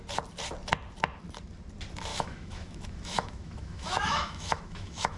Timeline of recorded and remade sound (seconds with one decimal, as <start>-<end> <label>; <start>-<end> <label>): 0.0-2.1 recorded; 2.1-5.2 remade